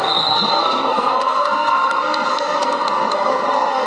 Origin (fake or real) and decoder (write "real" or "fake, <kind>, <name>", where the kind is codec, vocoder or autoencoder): fake, codec, SNAC